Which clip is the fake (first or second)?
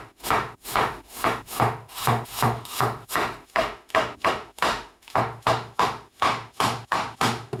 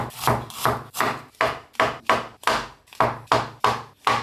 first